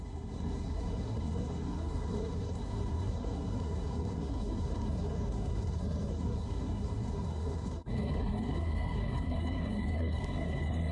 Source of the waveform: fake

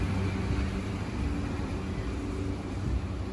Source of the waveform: real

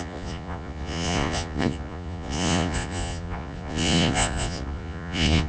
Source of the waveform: fake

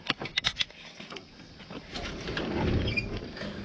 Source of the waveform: real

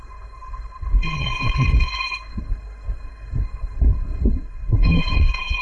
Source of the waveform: fake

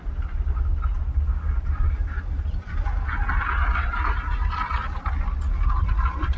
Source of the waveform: real